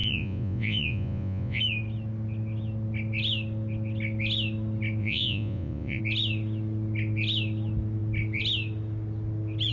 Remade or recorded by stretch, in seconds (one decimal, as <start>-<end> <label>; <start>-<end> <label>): 0.0-1.6 remade; 1.6-5.0 recorded; 5.0-6.0 remade; 6.0-9.7 recorded